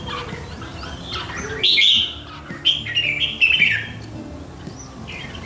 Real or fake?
real